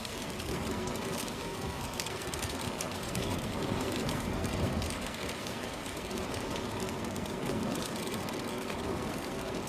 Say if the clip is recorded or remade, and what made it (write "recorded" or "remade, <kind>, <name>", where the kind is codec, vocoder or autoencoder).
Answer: remade, codec, SNAC